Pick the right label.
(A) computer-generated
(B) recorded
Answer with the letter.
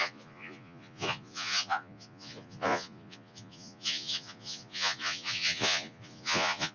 A